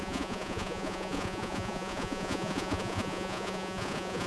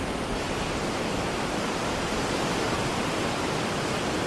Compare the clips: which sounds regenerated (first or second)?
first